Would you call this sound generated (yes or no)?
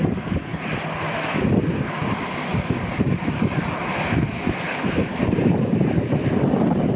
no